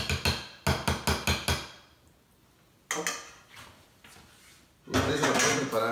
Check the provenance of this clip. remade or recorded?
recorded